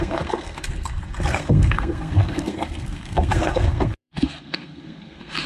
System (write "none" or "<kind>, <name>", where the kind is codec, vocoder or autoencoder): codec, SNAC